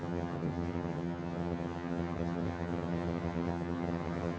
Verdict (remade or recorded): remade